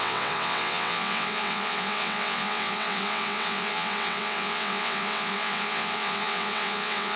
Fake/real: fake